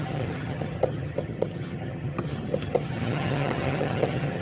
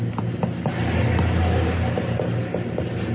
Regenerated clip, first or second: first